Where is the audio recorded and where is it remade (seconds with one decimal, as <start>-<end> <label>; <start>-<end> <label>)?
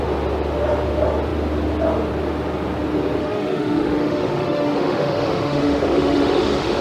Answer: 0.0-3.2 recorded; 3.2-6.8 remade